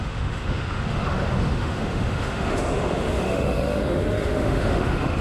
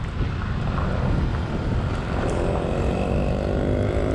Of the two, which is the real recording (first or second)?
second